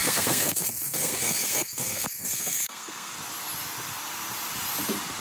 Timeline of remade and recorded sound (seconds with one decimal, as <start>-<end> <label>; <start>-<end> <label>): 0.0-3.1 remade; 3.1-5.2 recorded